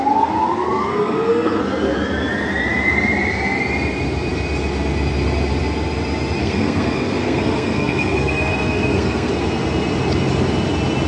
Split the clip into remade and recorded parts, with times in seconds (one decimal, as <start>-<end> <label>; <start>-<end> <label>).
0.0-0.9 recorded; 0.9-1.6 remade; 1.6-6.4 recorded; 6.4-9.3 remade; 9.3-11.1 recorded